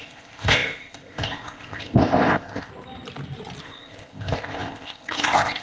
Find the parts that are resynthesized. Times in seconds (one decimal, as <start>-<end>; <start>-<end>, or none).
0.0-2.7; 3.6-5.6